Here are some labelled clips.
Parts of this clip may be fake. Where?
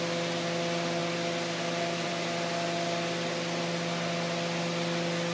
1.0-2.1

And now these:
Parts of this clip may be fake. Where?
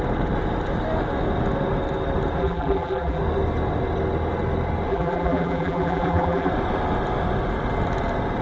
2.4-3.2; 4.9-6.5